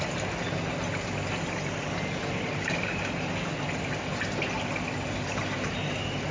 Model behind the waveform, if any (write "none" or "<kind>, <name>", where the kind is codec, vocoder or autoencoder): none